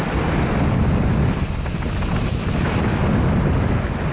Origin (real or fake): real